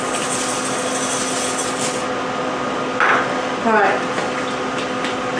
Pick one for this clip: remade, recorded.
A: recorded